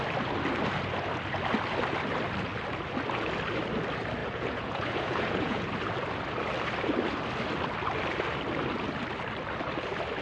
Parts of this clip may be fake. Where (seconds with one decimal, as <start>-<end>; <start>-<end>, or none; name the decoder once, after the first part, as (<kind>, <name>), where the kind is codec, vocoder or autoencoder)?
4.2-5.7 (vocoder, Vocos)

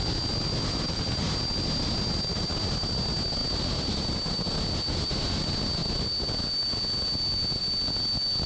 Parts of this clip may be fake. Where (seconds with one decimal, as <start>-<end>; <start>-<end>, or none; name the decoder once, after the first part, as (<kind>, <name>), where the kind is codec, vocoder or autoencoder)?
none

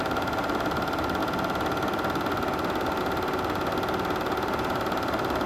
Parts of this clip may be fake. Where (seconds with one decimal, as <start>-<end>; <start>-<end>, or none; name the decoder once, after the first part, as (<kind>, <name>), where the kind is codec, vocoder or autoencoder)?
0.0-1.2 (vocoder, BigVGAN v2); 3.0-3.6; 4.2-5.5

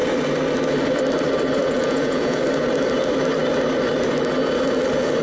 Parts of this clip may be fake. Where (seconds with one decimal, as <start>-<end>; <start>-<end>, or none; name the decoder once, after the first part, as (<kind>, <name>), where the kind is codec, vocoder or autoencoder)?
1.6-2.4 (vocoder, Vocos)